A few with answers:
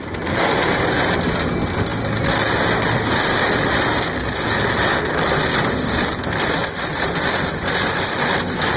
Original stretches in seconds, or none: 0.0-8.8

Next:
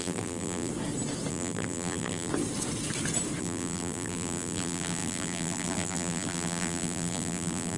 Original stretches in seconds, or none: 0.7-1.3; 2.3-3.4

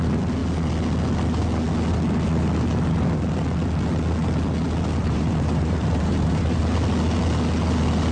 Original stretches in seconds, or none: 0.0-5.0; 6.6-8.1

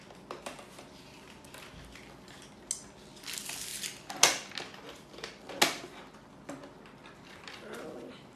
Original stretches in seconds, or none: 0.0-8.4

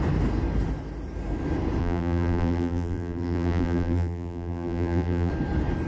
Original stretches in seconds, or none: 0.0-1.8; 5.3-5.9

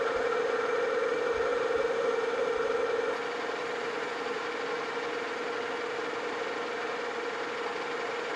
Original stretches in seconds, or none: 0.0-1.5; 2.5-3.6; 4.4-8.4